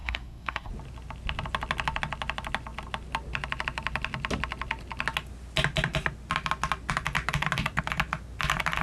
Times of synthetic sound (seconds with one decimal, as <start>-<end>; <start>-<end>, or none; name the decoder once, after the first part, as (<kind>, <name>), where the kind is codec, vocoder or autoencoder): 0.0-0.7 (codec, SNAC)